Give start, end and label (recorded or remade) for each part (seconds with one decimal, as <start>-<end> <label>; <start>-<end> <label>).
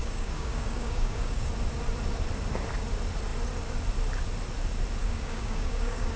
0.0-1.5 remade; 1.5-5.0 recorded; 5.0-6.2 remade